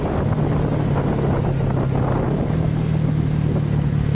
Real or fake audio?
real